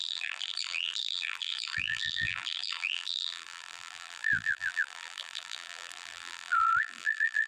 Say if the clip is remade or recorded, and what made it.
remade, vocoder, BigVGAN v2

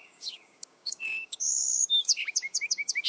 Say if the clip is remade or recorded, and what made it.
remade, codec, DAC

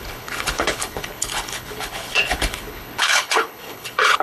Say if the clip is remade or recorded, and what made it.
remade, codec, HILCodec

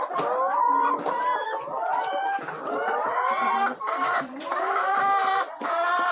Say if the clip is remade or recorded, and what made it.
remade, vocoder, BigVGAN v2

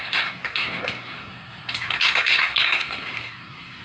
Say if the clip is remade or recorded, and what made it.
remade, codec, SNAC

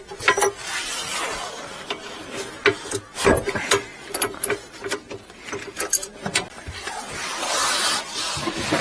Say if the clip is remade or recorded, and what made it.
remade, vocoder, BigVGAN v2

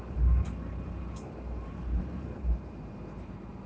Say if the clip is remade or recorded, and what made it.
remade, vocoder, BigVGAN v2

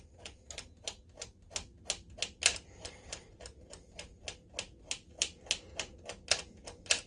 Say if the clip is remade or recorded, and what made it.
recorded